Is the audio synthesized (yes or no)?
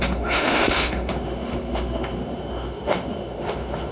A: yes